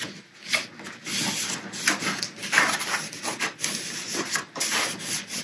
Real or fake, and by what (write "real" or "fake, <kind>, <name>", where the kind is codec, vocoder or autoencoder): real